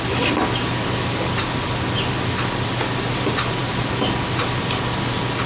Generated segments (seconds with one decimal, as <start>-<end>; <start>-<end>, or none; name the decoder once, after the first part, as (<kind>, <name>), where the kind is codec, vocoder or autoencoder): 0.8-1.3 (codec, DAC)